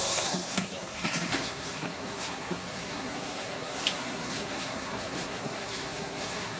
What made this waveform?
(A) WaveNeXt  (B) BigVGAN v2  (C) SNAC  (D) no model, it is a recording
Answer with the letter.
C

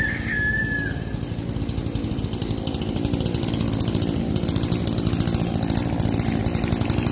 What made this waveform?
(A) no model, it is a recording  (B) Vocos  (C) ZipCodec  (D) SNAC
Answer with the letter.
A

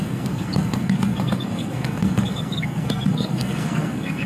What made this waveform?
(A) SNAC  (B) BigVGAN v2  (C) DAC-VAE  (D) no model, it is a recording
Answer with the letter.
A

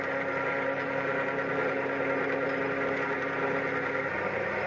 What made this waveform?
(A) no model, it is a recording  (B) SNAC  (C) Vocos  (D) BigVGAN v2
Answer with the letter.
A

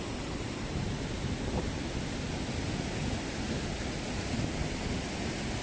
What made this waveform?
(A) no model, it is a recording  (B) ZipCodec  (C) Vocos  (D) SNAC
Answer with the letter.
A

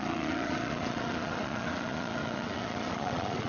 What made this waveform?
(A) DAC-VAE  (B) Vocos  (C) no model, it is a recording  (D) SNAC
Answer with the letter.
B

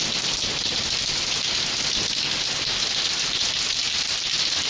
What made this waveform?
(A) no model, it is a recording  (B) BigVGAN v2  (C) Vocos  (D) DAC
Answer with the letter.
A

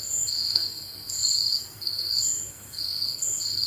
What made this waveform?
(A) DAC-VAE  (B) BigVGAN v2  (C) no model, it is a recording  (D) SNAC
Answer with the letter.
D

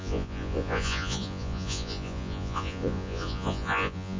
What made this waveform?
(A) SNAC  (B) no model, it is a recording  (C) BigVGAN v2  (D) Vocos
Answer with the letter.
D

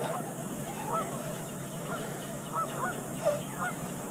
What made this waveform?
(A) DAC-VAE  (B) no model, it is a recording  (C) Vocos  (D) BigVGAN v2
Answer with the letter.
A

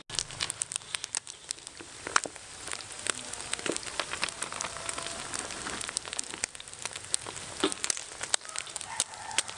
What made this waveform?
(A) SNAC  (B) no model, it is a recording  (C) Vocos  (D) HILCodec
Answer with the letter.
B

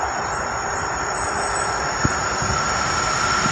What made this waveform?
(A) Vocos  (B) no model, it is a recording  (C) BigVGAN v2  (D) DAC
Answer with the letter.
B